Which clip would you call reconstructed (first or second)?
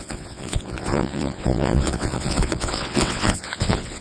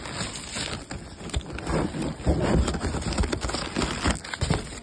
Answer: first